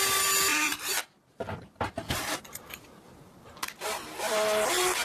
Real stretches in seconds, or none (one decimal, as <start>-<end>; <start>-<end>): 0.0-0.5; 3.5-5.0